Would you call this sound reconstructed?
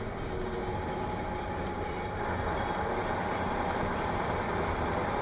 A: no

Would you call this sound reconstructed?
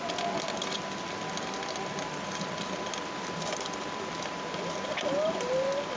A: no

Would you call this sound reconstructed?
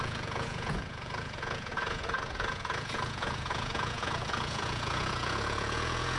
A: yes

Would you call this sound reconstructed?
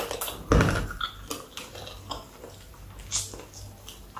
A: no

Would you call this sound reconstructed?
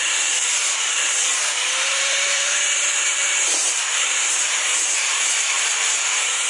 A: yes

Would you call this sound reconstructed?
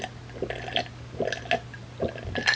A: no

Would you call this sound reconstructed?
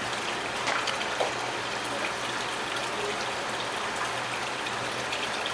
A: no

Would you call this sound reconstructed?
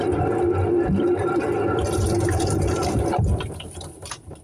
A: no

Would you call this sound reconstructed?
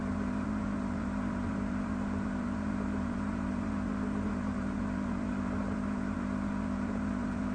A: yes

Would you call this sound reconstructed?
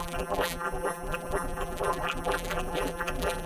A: yes